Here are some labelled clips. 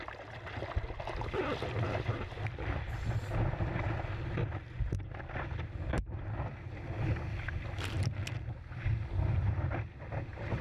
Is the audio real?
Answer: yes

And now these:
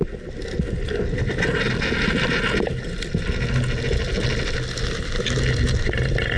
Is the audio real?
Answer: yes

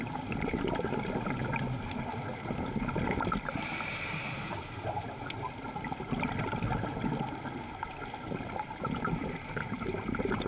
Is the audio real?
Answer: no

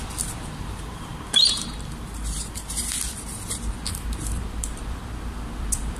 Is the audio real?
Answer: no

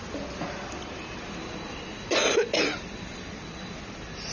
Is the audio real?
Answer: yes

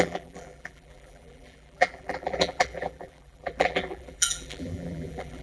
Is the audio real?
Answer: no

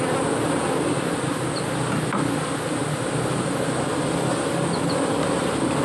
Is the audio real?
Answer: yes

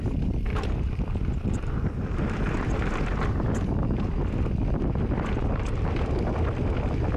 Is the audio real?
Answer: yes